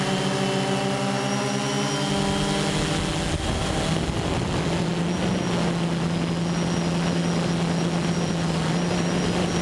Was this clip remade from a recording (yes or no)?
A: no